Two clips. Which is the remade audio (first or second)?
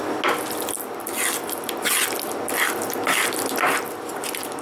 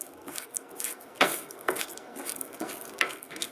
second